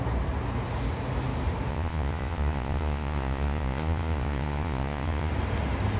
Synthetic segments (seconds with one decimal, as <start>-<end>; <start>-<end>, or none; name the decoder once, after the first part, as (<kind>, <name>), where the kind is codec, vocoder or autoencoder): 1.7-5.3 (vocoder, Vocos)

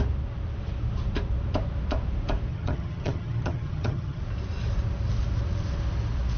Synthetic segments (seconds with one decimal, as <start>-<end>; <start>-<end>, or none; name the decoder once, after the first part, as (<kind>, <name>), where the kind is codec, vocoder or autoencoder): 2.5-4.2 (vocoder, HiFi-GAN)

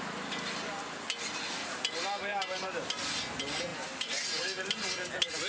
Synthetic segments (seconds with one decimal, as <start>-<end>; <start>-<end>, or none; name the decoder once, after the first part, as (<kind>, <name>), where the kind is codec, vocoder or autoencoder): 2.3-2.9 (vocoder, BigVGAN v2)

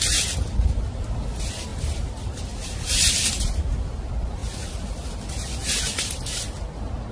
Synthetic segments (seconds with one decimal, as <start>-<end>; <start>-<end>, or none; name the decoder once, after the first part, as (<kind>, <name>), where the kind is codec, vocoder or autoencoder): none

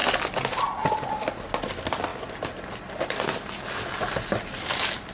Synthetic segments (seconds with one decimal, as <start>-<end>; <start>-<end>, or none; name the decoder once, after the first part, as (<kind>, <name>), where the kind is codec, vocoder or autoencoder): none

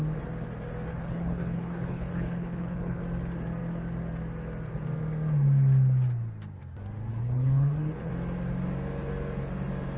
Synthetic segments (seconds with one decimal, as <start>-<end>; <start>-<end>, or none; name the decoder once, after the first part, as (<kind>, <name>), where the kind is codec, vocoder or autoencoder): 0.9-3.0 (codec, HILCodec); 7.1-8.1